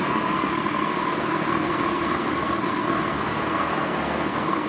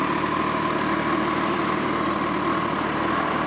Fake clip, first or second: first